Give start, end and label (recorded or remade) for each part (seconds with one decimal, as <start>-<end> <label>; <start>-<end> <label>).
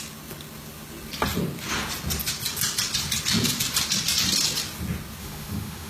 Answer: 0.0-5.2 recorded; 5.2-5.9 remade